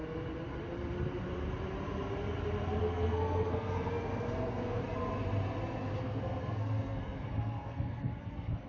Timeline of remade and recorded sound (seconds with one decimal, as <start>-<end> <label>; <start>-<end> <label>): 0.0-2.8 recorded; 2.8-4.8 remade; 4.8-6.0 recorded; 6.0-8.7 remade